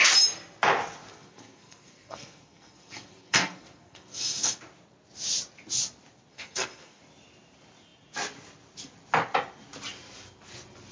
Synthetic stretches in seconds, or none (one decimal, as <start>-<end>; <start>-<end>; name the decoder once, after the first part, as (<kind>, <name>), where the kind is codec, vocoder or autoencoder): 1.1-4.6 (codec, SNAC); 6.3-7.0